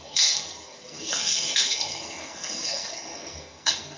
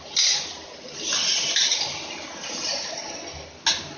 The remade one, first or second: first